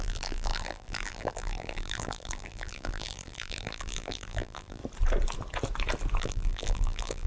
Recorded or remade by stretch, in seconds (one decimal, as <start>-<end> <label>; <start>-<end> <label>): 0.0-4.8 remade; 4.8-6.2 recorded; 6.2-7.3 remade